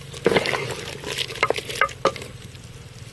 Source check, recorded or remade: recorded